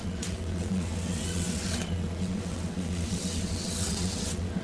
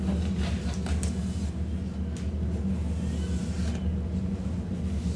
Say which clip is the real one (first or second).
second